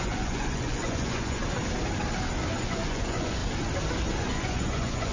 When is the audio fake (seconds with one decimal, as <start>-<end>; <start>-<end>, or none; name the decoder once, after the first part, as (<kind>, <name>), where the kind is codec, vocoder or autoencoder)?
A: 0.0-1.4 (vocoder, Vocos); 2.6-3.4; 4.1-5.1